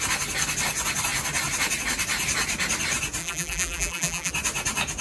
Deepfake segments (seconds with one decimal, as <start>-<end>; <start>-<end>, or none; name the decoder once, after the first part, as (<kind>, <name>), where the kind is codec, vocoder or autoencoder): 3.2-4.3 (vocoder, BigVGAN v2)